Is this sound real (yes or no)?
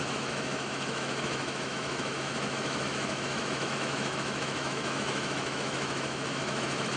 no